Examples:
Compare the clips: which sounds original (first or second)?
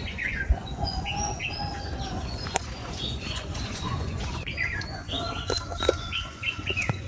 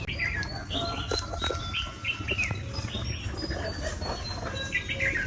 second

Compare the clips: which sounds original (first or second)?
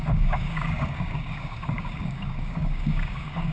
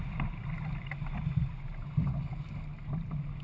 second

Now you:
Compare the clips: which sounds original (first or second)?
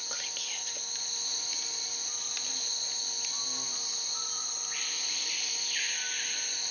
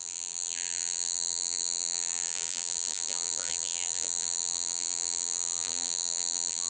first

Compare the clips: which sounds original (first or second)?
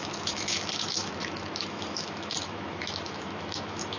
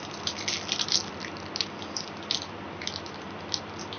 second